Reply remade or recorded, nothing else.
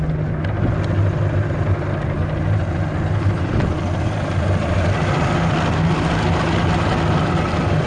recorded